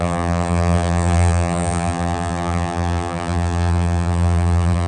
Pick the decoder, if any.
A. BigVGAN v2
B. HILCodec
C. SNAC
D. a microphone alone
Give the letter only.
A